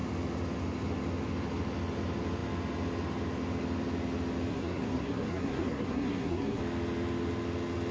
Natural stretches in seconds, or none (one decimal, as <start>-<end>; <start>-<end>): 0.0-4.5; 6.6-7.9